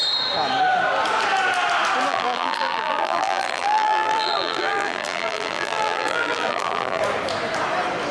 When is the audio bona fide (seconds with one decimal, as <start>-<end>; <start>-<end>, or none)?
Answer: 0.0-2.1; 7.0-8.1